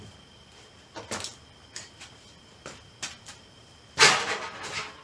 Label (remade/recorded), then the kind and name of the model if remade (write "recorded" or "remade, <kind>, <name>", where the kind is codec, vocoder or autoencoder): recorded